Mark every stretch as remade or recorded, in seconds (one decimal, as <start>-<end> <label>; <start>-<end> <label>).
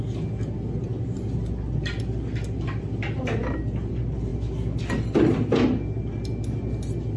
0.0-7.2 recorded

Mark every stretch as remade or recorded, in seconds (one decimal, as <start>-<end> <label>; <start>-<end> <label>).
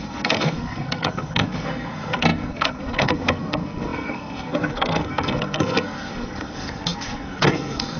0.0-8.0 remade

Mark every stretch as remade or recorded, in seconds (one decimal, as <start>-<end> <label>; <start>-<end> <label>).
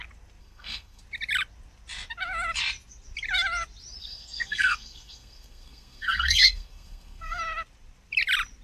0.0-0.4 recorded; 0.4-1.0 remade; 1.0-4.0 recorded; 4.0-7.4 remade; 7.4-8.6 recorded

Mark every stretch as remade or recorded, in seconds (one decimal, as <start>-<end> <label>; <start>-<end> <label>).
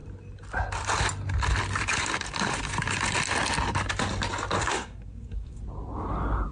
0.0-4.6 recorded; 4.6-5.6 remade; 5.6-6.5 recorded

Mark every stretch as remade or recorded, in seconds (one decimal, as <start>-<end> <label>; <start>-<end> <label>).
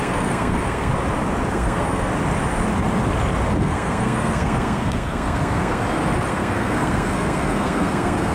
0.0-0.9 remade; 0.9-1.5 recorded; 1.5-2.1 remade; 2.1-3.6 recorded; 3.6-5.8 remade; 5.8-6.3 recorded; 6.3-8.3 remade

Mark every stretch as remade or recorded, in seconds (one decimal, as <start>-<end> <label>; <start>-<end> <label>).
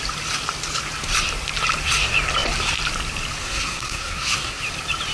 0.0-3.4 recorded; 3.4-4.6 remade; 4.6-5.1 recorded